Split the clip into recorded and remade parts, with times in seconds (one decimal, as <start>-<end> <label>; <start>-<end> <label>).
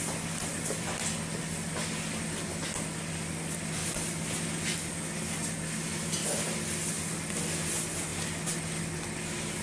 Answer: 0.0-9.6 recorded